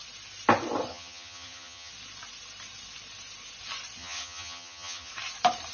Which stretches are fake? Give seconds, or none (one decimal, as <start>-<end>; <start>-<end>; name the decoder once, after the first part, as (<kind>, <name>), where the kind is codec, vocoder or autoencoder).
0.9-1.9 (vocoder, HiFi-GAN); 4.0-5.1